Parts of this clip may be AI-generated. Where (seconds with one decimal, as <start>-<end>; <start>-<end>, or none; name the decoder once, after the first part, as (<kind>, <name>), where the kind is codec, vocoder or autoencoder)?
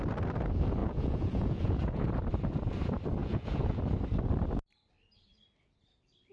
0.8-2.1 (vocoder, Vocos); 3.2-3.8